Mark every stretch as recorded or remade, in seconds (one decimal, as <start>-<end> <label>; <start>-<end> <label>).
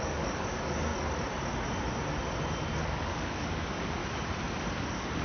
0.0-0.9 remade; 0.9-2.8 recorded; 2.8-4.0 remade; 4.0-4.7 recorded; 4.7-5.2 remade